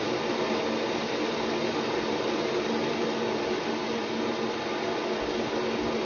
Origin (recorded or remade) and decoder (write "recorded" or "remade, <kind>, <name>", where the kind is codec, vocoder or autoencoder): recorded